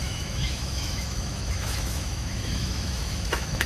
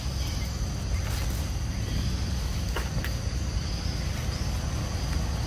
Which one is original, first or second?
second